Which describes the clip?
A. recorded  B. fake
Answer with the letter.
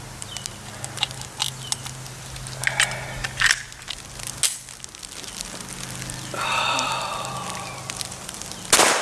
A